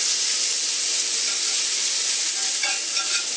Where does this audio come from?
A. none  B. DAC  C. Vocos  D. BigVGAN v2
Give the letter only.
A